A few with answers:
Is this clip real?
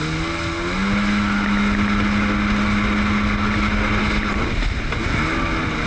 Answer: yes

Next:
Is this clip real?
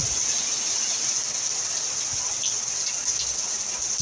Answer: yes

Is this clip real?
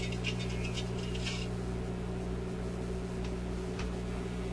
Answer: yes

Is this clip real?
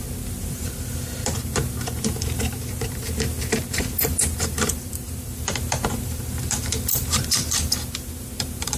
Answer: no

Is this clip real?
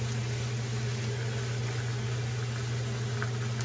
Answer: yes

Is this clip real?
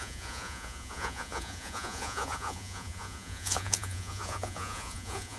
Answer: no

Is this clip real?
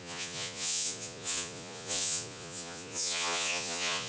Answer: no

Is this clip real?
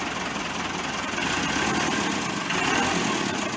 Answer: yes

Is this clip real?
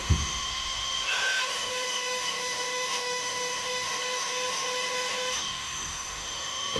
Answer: no